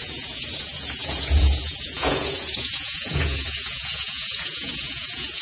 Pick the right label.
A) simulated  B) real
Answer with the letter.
A